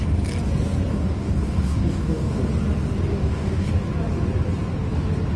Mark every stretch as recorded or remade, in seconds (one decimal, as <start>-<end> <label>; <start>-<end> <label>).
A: 0.0-0.9 recorded; 0.9-2.4 remade; 2.4-3.1 recorded; 3.1-3.7 remade; 3.7-5.4 recorded